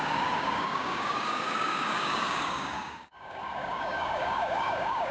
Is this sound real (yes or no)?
no